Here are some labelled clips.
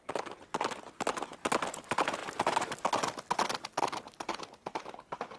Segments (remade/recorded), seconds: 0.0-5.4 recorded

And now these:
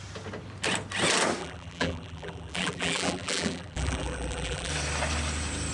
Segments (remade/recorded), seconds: 0.0-1.4 recorded; 1.4-4.7 remade; 4.7-5.7 recorded

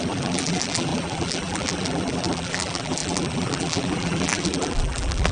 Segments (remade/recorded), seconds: 0.0-5.3 remade